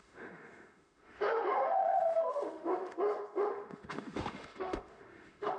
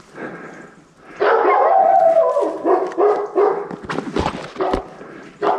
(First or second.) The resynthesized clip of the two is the first